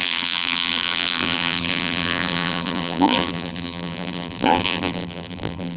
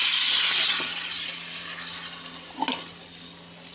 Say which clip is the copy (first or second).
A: first